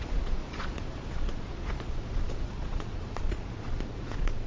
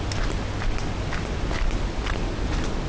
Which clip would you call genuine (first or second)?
second